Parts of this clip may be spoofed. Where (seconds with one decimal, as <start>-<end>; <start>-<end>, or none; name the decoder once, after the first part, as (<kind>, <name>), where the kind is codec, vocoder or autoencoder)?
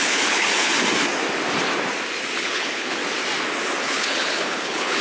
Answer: 0.0-0.7 (codec, HILCodec); 2.4-3.0; 3.8-5.0